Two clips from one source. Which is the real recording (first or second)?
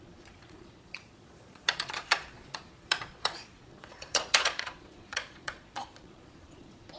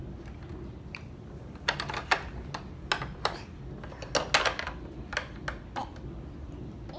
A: second